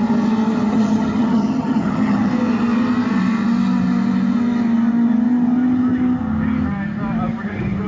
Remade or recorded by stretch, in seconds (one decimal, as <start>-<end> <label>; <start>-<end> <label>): 0.0-0.7 recorded; 0.7-2.3 remade; 2.3-7.9 recorded

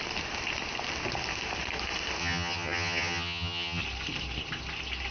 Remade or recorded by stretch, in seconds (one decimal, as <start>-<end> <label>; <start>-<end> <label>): 0.0-2.2 recorded; 2.2-3.8 remade; 3.8-5.1 recorded

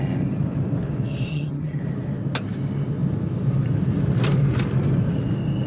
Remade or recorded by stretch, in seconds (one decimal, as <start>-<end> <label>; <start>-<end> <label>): 0.0-1.3 recorded; 1.3-1.8 remade; 1.8-5.7 recorded

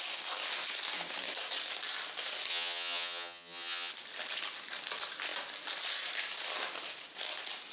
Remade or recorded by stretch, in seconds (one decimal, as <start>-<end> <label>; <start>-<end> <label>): 0.0-2.5 recorded; 2.5-3.9 remade; 3.9-7.7 recorded

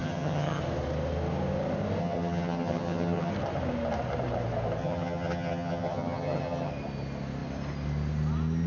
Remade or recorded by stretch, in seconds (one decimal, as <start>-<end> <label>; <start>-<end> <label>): 0.0-0.6 remade; 0.6-2.0 recorded; 2.0-3.3 remade; 3.3-4.8 recorded; 4.8-6.7 remade; 6.7-8.7 recorded

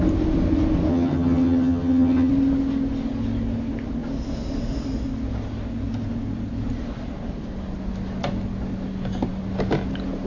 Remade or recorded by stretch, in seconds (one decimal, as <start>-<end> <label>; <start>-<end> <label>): 0.0-0.9 recorded; 0.9-2.3 remade; 2.3-10.3 recorded

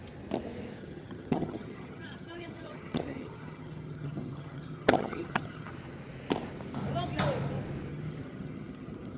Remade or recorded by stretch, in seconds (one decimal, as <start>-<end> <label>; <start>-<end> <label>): 0.0-0.8 recorded; 0.8-5.7 remade; 5.7-7.9 recorded; 7.9-9.2 remade